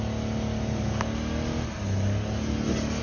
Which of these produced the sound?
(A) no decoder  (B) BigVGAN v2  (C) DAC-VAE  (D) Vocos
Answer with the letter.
A